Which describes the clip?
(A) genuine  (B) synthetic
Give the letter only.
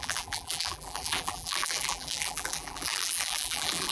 B